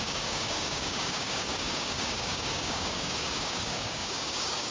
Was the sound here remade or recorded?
remade